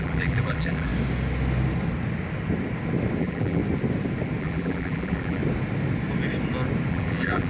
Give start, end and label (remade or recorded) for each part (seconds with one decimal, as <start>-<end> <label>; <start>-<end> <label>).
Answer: 0.0-0.9 remade; 0.9-3.2 recorded; 3.2-3.6 remade; 3.6-4.4 recorded; 4.4-5.4 remade; 5.4-6.9 recorded; 6.9-7.5 remade